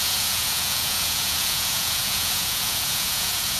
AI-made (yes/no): yes